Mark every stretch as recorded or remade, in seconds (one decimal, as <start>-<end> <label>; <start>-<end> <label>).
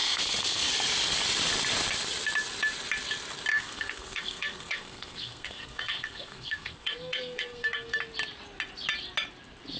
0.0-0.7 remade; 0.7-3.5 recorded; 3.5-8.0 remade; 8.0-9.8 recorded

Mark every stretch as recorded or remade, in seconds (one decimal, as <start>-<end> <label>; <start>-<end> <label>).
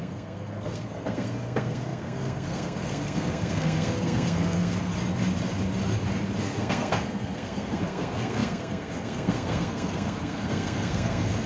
0.0-4.9 remade; 4.9-6.4 recorded; 6.4-11.5 remade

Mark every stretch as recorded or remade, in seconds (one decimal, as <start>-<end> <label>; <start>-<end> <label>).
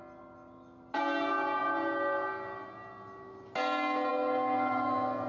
0.0-5.3 recorded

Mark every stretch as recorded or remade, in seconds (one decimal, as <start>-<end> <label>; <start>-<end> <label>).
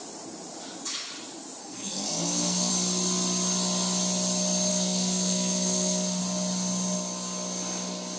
0.0-1.6 recorded; 1.6-2.7 remade; 2.7-4.7 recorded; 4.7-6.2 remade; 6.2-8.2 recorded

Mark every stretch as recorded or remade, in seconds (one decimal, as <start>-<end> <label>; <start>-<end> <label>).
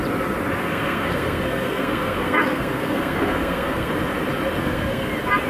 0.0-0.6 recorded; 0.6-3.9 remade; 3.9-4.6 recorded; 4.6-5.1 remade; 5.1-5.5 recorded